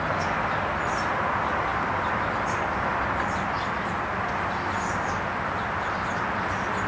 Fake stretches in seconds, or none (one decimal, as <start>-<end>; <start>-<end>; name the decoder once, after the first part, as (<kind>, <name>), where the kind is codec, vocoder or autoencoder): none